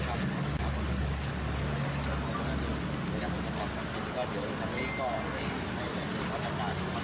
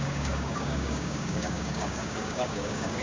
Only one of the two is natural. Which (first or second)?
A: first